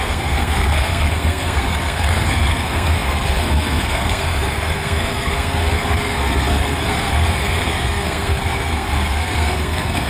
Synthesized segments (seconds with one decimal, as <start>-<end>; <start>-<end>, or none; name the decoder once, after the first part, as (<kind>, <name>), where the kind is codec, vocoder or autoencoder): 0.0-10.1 (codec, SNAC)